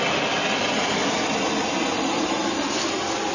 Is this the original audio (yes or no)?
yes